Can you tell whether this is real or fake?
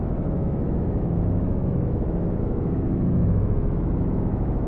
fake